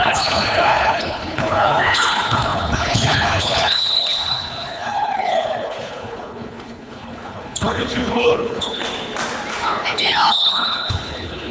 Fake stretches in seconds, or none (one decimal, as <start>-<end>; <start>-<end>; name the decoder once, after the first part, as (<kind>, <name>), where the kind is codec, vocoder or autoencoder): 0.0-8.8 (codec, HILCodec); 9.5-11.5